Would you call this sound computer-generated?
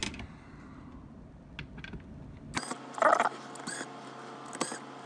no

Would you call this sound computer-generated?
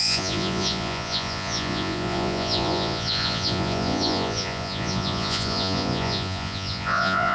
yes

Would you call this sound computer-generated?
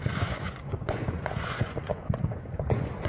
yes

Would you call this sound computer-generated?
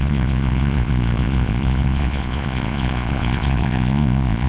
yes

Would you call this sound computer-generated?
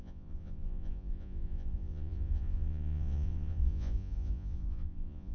yes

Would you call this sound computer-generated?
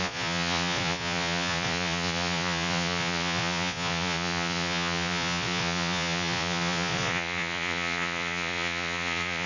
yes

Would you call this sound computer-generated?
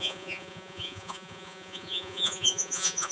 yes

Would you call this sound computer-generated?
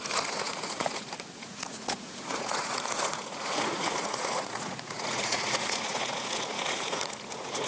yes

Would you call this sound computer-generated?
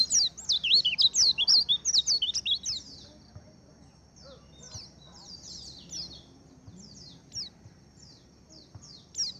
no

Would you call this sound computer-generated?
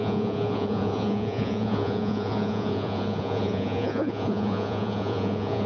yes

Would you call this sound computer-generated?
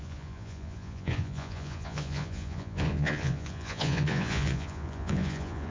yes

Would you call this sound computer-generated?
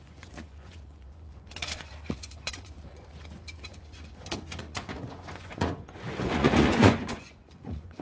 yes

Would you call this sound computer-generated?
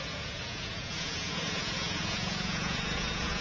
yes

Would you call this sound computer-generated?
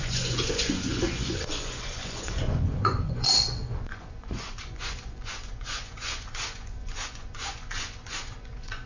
yes